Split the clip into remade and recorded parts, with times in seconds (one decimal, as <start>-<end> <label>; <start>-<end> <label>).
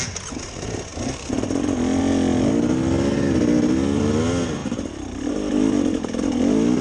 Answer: 0.0-4.6 recorded; 4.6-5.3 remade; 5.3-6.8 recorded